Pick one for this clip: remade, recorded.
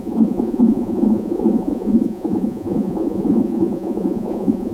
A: remade